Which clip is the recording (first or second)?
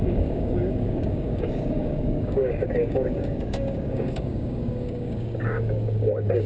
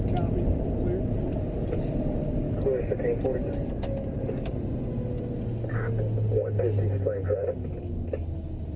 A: second